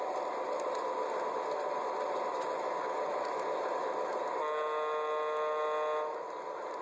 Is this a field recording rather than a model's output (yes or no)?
yes